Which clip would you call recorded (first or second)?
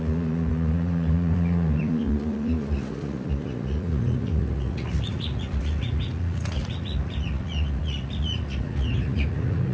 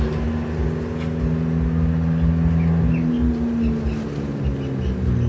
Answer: second